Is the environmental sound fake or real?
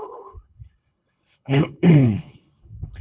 fake